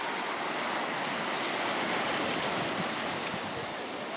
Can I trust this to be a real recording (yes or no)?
yes